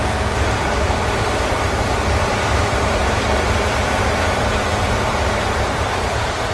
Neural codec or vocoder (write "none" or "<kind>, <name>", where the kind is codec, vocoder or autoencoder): vocoder, BigVGAN v2